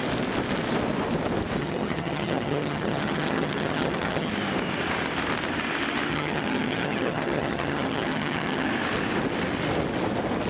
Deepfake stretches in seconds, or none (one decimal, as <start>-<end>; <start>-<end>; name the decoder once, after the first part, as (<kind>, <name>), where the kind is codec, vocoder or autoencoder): 1.6-4.3 (vocoder, HiFi-GAN); 6.1-8.7